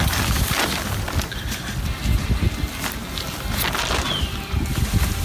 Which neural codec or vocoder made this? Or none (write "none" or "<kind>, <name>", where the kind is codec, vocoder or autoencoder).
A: none